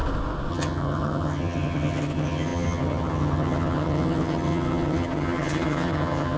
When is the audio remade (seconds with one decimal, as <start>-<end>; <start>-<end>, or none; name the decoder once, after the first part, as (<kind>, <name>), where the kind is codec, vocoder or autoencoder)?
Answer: 0.5-6.4 (vocoder, HiFi-GAN)